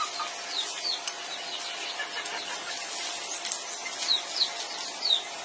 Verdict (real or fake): real